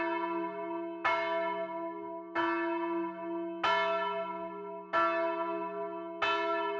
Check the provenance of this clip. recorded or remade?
recorded